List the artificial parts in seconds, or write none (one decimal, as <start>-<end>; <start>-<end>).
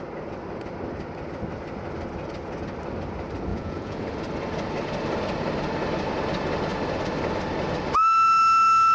3.5-4.0